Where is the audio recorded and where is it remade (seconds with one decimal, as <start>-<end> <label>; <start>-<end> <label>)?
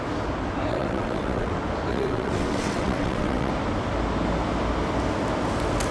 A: 0.0-0.7 recorded; 0.7-1.5 remade; 1.5-1.9 recorded; 1.9-3.5 remade; 3.5-5.9 recorded